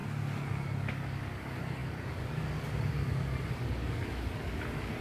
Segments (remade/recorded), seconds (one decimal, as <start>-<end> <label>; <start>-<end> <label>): 0.0-5.0 remade